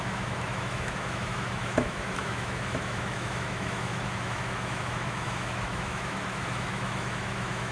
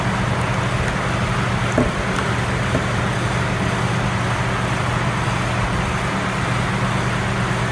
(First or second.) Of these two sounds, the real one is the second